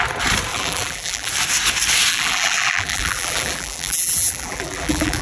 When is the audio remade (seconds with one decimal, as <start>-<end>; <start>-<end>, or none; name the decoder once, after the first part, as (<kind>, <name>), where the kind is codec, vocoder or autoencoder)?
0.5-1.3 (vocoder, BigVGAN v2); 2.1-5.2